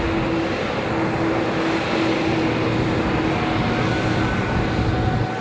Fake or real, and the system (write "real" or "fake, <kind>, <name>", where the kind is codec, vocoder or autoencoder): real